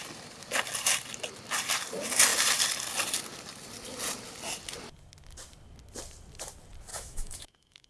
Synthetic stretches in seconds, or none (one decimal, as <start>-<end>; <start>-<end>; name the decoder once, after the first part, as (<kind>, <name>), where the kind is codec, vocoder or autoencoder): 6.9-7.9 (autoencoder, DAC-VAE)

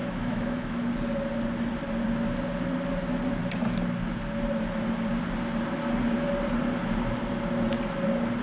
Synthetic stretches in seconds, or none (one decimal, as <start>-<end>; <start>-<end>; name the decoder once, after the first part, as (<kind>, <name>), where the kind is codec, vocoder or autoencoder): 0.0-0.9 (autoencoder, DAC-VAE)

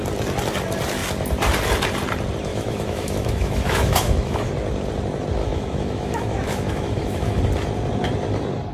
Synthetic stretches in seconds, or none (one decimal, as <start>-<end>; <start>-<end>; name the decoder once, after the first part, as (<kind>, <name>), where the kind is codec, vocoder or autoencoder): 2.5-4.5 (autoencoder, DAC-VAE); 5.4-7.4

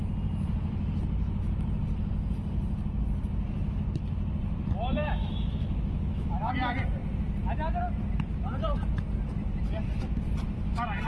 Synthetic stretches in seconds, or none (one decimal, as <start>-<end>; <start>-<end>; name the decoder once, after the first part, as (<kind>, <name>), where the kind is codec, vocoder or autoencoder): 5.0-6.5 (autoencoder, DAC-VAE)

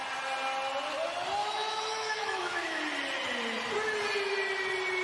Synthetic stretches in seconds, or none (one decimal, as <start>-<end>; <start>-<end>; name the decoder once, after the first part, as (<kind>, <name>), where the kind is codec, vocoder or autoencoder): 1.4-2.8 (autoencoder, DAC-VAE)